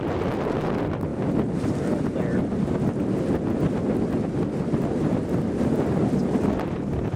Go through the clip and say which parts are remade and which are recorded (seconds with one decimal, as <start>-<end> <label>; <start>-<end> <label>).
0.0-7.2 recorded